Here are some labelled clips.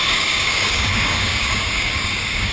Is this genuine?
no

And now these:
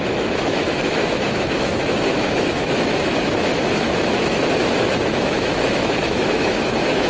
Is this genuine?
no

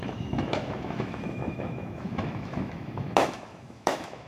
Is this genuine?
no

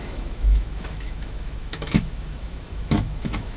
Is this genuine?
no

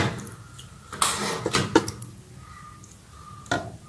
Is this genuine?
yes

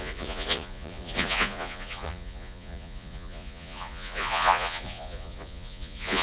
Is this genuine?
no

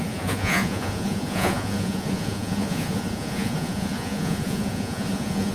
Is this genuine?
no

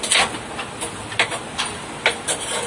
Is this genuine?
yes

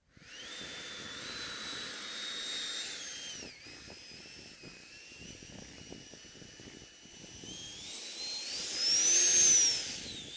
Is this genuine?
yes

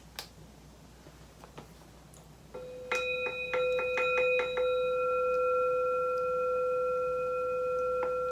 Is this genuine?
yes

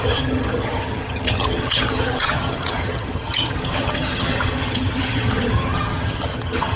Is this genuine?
no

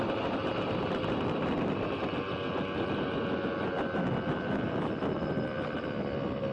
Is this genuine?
yes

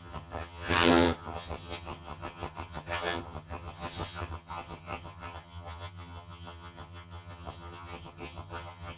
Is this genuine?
no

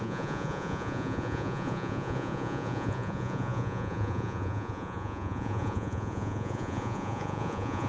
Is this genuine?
no